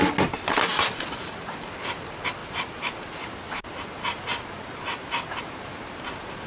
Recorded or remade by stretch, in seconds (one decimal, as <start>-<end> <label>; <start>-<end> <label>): 0.0-6.5 recorded